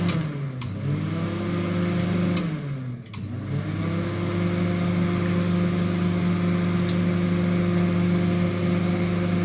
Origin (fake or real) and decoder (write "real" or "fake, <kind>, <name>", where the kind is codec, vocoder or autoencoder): real